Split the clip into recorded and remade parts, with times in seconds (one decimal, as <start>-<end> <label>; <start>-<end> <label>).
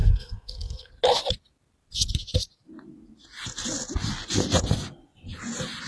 0.0-0.9 remade; 0.9-5.9 recorded